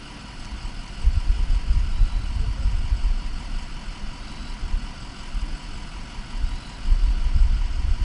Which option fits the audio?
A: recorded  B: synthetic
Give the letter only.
A